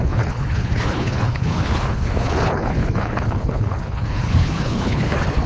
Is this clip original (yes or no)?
no